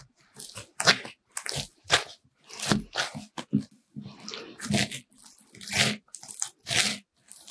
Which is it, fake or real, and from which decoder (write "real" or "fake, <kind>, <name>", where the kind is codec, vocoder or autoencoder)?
real